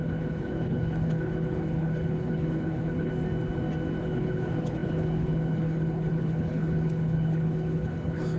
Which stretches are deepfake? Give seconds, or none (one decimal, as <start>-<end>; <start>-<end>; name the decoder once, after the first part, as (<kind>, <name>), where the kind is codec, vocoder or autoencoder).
0.0-3.1 (codec, HILCodec); 4.0-8.4